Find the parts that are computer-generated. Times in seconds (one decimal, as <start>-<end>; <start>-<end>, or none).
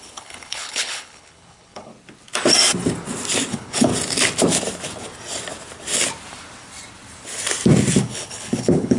0.0-1.9; 3.5-3.9; 8.0-9.0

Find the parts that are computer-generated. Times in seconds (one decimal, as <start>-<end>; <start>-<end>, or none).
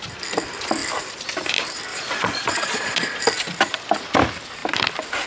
1.9-3.2